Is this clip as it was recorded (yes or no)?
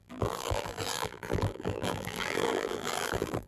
no